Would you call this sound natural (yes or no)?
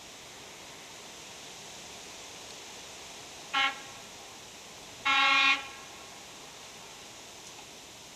yes